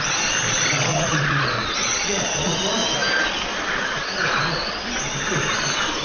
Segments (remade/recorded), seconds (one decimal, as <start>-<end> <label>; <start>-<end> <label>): 0.0-0.9 recorded; 0.9-2.5 remade; 2.5-6.0 recorded